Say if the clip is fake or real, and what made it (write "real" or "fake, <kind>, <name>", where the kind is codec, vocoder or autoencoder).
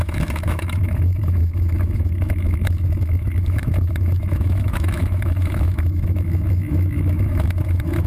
fake, autoencoder, DAC-VAE